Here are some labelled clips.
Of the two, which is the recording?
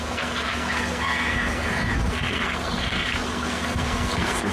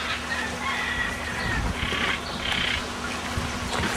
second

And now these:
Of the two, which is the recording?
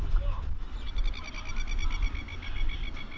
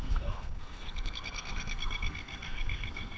first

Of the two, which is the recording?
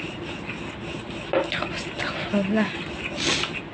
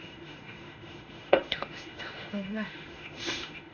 first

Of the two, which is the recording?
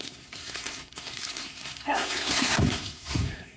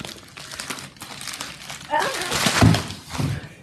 second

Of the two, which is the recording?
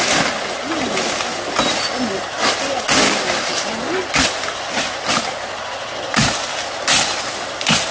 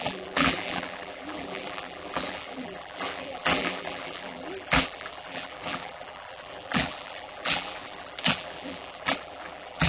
first